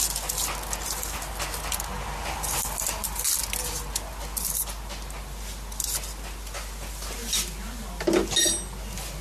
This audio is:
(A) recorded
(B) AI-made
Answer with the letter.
A